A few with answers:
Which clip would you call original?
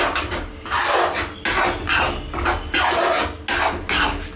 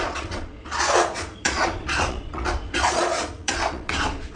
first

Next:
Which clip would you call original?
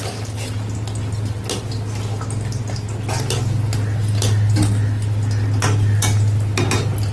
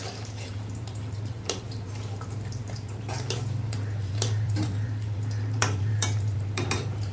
first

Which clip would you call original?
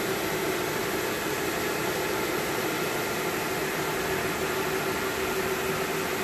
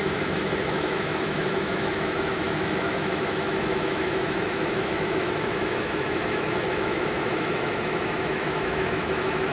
first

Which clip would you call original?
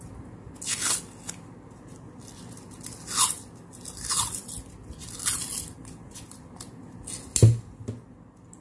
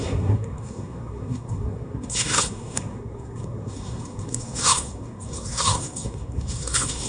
first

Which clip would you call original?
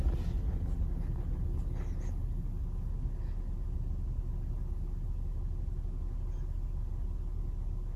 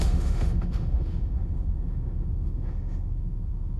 first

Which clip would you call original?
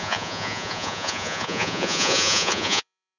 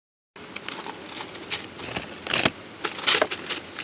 second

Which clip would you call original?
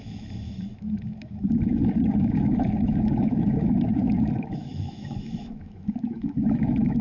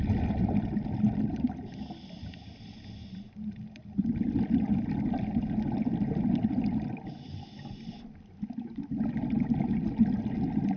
second